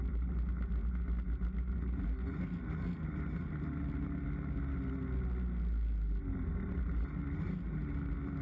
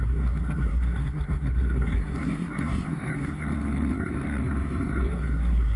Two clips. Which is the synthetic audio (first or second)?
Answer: second